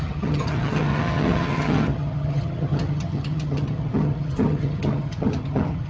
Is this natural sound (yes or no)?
no